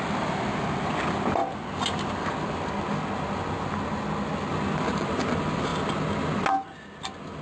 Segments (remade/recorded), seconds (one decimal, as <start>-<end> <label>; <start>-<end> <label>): 0.0-7.4 recorded